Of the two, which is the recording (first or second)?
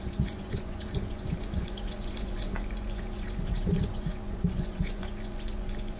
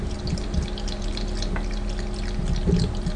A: second